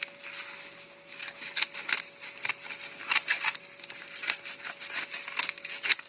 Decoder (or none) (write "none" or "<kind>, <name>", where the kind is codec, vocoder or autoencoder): none